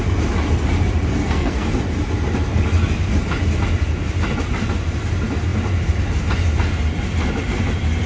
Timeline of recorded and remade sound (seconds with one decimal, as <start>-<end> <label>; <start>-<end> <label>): 0.0-1.1 recorded; 1.1-1.7 remade; 1.7-8.1 recorded